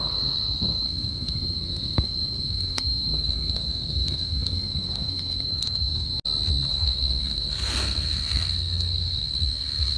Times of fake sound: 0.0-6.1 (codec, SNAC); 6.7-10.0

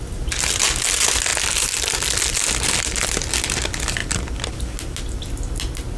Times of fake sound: none

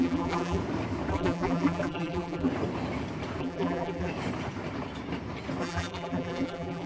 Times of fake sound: 0.0-0.6 (vocoder, BigVGAN v2); 1.1-2.5; 3.4-4.1; 5.6-6.9

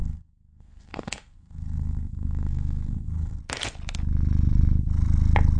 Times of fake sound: 0.0-3.4 (codec, SNAC)

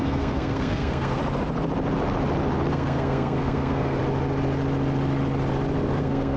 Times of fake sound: 0.0-1.2 (codec, SNAC); 2.7-4.0; 6.0-6.4

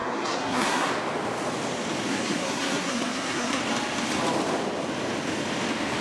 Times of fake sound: 0.0-0.9 (codec, SNAC); 2.1-3.6

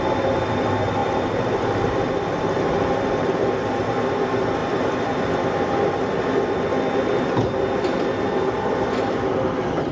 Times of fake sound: none

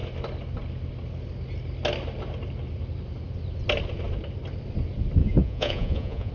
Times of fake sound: 5.2-6.3 (vocoder, Vocos)